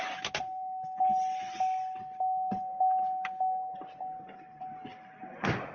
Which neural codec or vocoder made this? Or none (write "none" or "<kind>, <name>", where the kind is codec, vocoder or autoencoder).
none